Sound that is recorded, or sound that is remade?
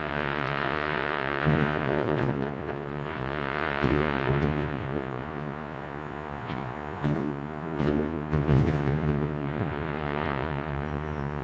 remade